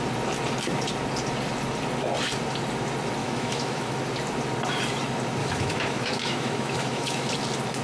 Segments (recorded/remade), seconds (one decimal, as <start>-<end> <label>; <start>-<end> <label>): 0.0-3.2 recorded; 3.2-4.0 remade; 4.0-5.4 recorded; 5.4-7.3 remade; 7.3-7.8 recorded